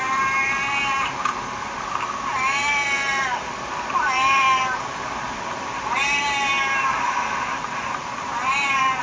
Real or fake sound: fake